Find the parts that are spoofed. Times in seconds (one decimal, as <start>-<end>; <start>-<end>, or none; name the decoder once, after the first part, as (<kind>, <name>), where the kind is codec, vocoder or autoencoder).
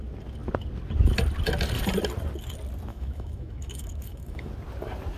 2.9-4.5 (autoencoder, DAC-VAE)